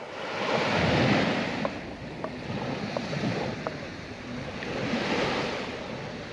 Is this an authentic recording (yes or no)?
yes